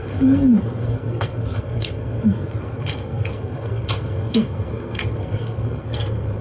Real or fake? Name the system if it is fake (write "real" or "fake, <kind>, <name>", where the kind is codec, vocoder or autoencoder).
fake, codec, SNAC